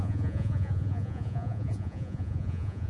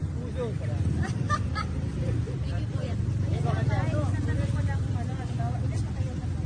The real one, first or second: second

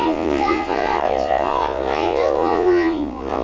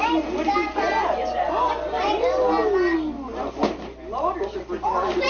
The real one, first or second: second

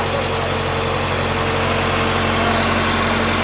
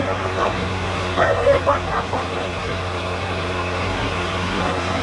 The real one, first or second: first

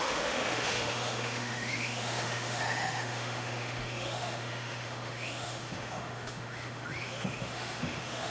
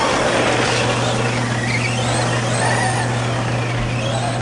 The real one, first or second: second